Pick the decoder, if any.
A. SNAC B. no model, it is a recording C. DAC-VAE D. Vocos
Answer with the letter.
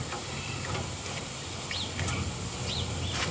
B